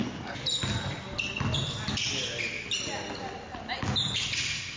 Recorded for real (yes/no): yes